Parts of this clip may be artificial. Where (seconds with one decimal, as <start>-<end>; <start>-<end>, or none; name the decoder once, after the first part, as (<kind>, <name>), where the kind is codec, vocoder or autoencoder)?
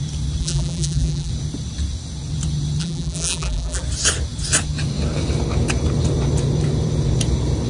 0.4-1.3 (vocoder, BigVGAN v2); 2.8-3.8